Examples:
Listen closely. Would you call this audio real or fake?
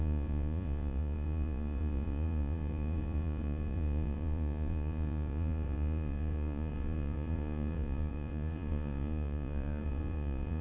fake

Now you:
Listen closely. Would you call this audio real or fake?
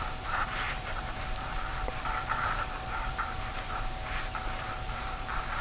fake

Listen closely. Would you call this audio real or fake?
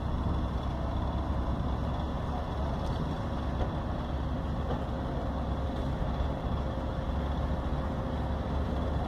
real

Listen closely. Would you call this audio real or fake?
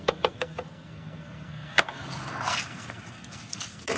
fake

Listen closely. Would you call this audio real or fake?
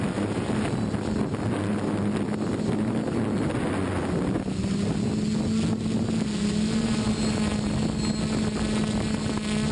real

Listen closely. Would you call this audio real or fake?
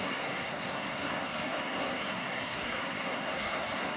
fake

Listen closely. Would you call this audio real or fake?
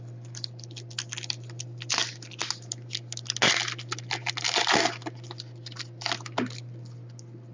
real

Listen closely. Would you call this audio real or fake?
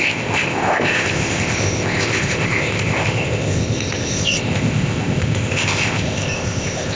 fake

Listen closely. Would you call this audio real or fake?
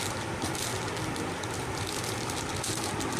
real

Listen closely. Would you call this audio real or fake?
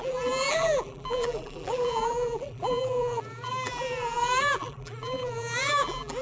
fake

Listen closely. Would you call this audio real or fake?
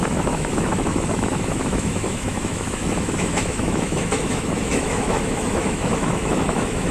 fake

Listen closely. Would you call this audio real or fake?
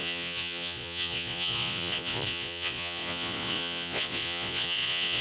fake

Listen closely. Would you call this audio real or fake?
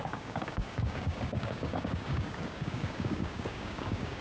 fake